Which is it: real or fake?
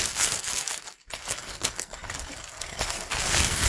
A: fake